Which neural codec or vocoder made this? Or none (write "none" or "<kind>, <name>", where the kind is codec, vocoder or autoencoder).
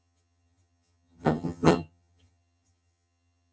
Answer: vocoder, HiFi-GAN